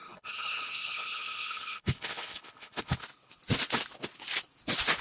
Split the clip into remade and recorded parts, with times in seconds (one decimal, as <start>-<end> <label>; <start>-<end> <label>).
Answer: 0.0-3.0 remade; 3.0-5.0 recorded